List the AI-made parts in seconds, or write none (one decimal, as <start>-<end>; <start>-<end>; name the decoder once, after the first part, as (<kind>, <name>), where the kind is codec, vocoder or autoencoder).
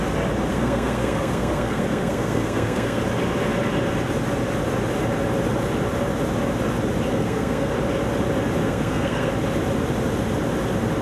0.5-3.0 (codec, SNAC); 7.1-7.7; 8.6-9.3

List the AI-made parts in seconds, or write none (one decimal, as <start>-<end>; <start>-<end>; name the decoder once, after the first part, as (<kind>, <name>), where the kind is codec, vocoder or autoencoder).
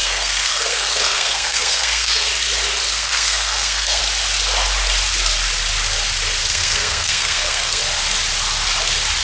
0.0-2.3 (codec, SNAC); 2.9-4.0; 6.5-7.8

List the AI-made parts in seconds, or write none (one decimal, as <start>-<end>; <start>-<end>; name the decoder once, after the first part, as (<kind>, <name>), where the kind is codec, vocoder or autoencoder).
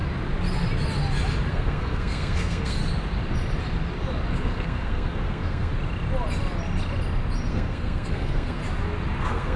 1.5-2.8 (codec, SNAC); 4.3-5.7; 7.5-8.6; 9.2-9.6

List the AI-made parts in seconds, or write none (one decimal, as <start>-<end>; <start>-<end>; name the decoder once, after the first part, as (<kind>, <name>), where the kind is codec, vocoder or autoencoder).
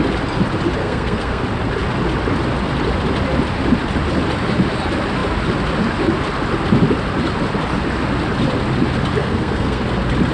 0.8-1.4 (codec, SNAC); 9.2-9.8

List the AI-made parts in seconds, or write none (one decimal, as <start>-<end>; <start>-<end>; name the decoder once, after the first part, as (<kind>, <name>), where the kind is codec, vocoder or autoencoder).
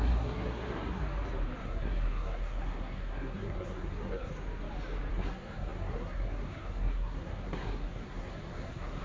0.0-1.0 (codec, SNAC); 1.6-4.3; 5.1-9.0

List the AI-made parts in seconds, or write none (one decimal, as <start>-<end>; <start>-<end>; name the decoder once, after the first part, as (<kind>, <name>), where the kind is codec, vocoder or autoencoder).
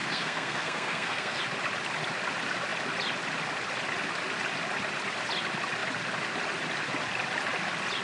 0.0-1.4 (codec, SNAC)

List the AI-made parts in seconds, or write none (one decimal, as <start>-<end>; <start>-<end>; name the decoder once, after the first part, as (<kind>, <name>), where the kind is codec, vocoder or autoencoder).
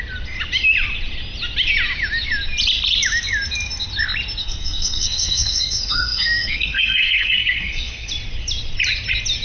4.4-8.1 (codec, SNAC)